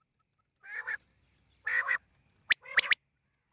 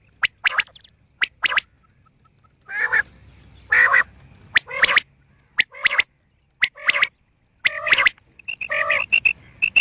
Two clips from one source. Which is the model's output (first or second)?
first